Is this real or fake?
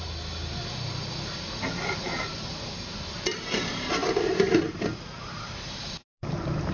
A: fake